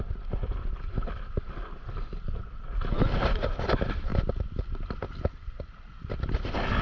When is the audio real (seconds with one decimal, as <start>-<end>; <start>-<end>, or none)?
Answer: 0.0-6.8